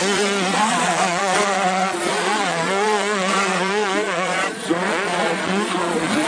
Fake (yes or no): yes